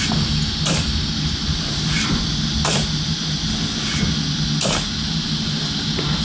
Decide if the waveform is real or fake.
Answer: real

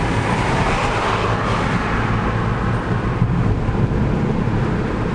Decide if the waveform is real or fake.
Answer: real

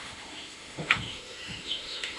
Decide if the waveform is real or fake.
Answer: fake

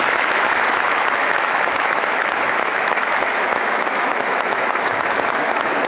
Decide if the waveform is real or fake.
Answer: fake